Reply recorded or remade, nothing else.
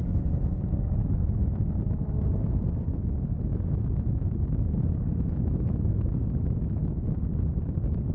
remade